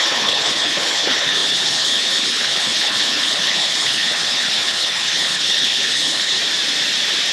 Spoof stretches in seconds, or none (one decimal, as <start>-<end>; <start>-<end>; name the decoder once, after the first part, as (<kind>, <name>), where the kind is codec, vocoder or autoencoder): 0.0-6.4 (codec, HILCodec)